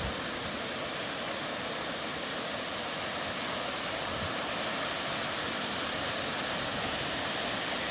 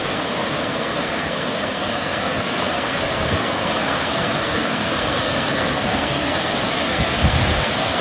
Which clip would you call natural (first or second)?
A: first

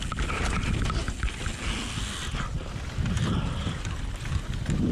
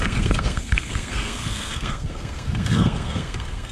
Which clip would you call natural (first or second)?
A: first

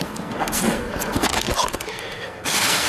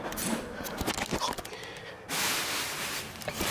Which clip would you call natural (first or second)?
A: second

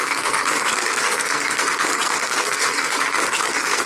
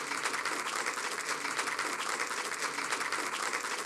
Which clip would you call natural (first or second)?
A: second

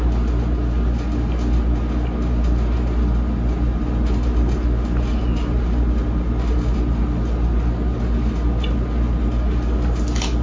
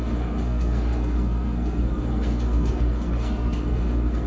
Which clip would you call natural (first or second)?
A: first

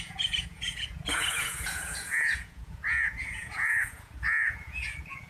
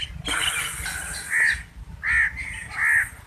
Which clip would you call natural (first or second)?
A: second